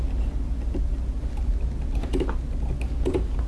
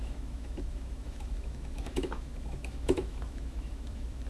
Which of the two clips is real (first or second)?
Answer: first